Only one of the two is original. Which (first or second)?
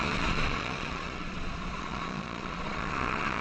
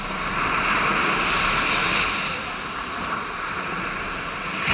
second